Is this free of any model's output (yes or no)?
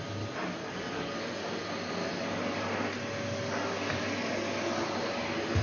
yes